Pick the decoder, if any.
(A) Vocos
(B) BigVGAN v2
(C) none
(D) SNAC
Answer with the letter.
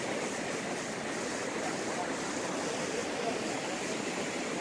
C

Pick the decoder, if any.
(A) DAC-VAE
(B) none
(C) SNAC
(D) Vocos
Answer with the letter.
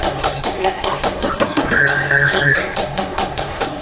C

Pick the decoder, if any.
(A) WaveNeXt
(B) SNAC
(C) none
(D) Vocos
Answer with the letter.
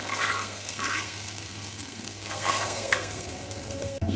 B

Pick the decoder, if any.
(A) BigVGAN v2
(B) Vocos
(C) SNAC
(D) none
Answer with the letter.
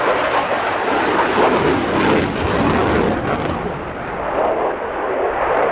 D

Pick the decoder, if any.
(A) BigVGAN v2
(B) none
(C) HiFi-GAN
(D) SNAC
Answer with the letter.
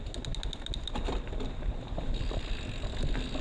B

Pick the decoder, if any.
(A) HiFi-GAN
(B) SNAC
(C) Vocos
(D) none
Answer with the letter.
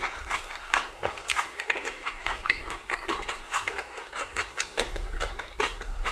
B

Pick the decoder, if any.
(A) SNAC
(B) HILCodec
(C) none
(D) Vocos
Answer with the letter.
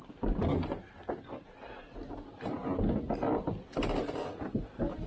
C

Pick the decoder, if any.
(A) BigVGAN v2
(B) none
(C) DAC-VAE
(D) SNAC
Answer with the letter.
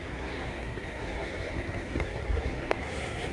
D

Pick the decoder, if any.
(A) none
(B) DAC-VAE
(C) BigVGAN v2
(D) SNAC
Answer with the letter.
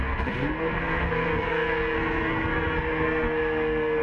D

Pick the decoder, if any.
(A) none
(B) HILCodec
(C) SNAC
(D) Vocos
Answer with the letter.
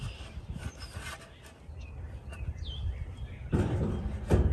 A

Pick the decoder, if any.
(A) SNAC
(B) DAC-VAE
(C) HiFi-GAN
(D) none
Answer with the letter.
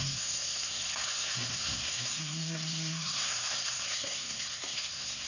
A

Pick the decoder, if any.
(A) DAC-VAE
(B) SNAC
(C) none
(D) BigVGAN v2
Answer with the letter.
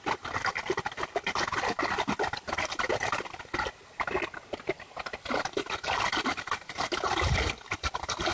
C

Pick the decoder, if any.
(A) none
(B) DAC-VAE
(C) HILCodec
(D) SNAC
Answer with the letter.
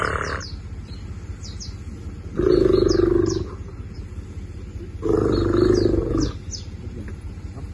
A